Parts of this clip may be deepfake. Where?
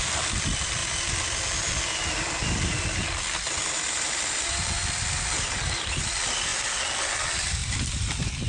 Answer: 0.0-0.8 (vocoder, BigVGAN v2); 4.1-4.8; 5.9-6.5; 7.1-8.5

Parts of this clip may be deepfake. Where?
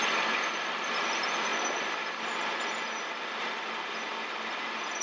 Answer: none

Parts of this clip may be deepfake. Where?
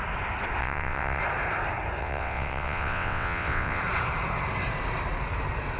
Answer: 0.6-1.2 (vocoder, WaveNeXt); 2.0-3.8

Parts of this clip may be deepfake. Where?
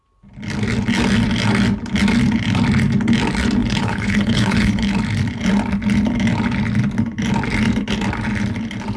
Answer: 3.6-4.9 (codec, HILCodec)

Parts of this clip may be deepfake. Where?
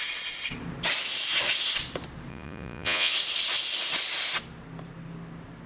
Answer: 2.3-3.1 (vocoder, Vocos)